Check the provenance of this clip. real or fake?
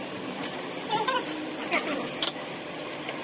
fake